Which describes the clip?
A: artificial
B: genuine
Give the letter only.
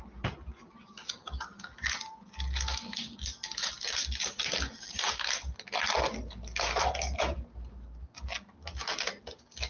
B